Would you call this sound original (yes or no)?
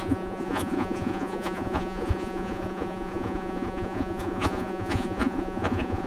no